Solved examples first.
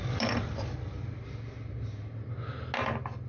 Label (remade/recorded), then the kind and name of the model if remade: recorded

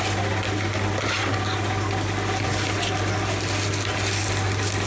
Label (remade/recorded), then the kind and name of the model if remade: recorded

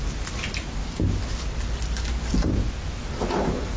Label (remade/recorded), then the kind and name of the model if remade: recorded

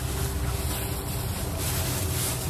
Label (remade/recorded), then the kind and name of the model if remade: recorded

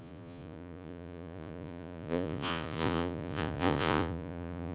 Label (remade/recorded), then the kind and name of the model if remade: remade, vocoder, Vocos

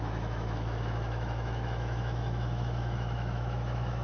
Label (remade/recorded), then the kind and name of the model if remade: remade, autoencoder, DAC-VAE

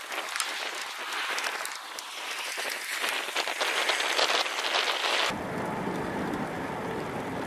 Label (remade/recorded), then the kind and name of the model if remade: recorded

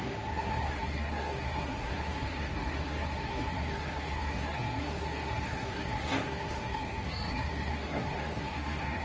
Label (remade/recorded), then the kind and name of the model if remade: remade, codec, SNAC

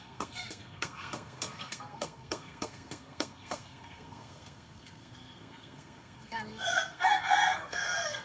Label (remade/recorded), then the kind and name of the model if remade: remade, codec, SNAC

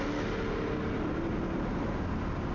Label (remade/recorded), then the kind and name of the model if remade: recorded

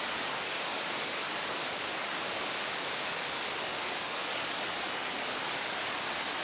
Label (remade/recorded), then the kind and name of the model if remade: remade, codec, DAC